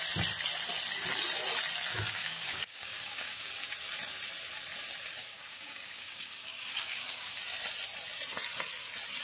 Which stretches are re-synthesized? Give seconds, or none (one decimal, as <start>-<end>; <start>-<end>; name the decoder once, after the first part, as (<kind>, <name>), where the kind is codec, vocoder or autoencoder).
1.9-3.5 (codec, DAC); 5.2-7.4